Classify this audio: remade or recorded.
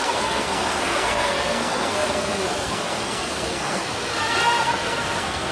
remade